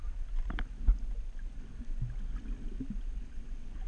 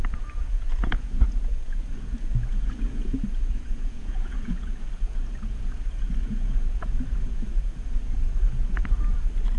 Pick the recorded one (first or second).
first